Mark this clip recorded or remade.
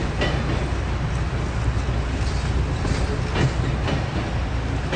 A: recorded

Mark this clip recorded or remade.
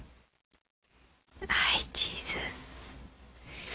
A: recorded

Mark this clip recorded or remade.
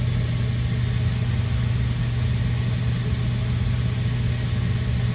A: recorded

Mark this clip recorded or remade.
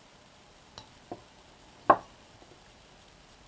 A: recorded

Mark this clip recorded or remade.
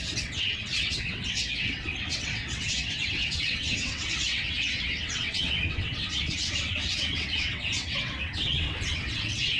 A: remade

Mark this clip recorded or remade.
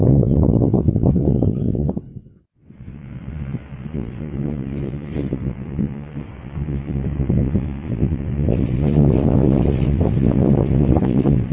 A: remade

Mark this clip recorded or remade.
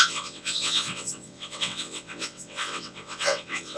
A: remade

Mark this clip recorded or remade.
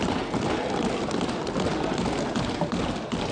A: recorded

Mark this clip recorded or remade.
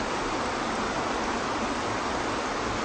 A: recorded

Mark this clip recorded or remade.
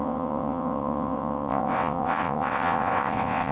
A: remade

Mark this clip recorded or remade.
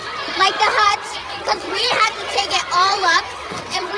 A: remade